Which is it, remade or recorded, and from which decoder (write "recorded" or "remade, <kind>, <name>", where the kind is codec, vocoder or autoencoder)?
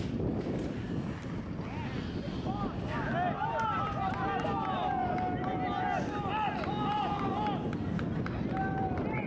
recorded